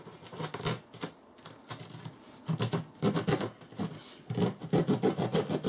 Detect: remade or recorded recorded